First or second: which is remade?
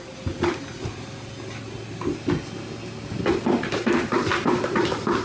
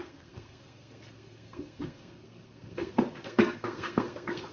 second